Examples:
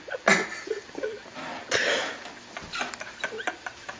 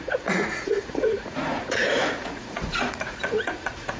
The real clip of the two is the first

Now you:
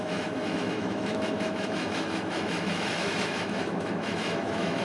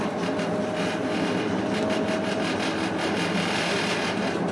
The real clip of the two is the second